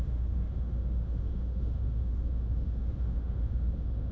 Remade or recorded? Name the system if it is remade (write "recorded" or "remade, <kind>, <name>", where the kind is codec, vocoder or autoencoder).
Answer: remade, autoencoder, DAC-VAE